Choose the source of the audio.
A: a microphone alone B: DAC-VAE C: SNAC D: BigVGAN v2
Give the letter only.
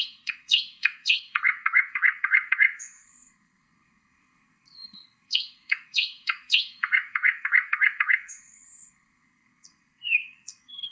C